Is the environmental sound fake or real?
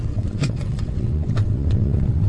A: fake